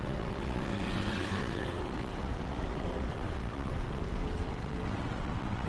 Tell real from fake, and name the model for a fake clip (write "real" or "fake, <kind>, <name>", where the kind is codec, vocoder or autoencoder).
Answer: fake, vocoder, WaveNeXt